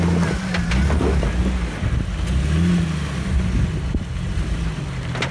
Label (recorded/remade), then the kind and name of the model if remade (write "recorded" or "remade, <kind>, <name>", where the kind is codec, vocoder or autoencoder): recorded